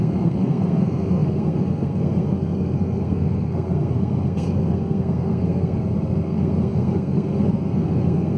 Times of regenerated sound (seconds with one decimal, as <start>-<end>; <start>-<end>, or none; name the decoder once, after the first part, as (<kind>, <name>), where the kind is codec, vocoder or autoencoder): 0.0-8.4 (codec, SNAC)